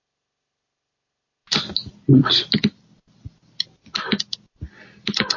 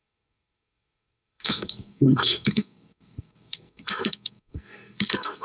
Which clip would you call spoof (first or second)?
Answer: second